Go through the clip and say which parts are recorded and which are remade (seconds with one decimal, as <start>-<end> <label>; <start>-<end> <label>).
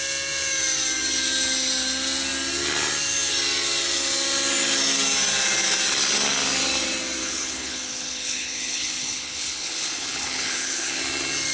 0.0-7.2 recorded; 7.2-11.0 remade; 11.0-11.5 recorded